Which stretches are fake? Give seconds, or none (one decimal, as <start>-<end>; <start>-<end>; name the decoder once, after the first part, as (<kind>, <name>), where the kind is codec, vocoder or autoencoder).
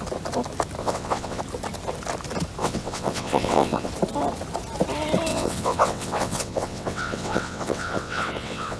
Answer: 0.8-1.4 (vocoder, WaveNeXt); 2.6-3.9; 5.3-8.8